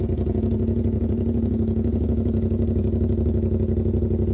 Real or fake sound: fake